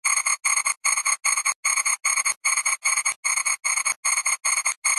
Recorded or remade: recorded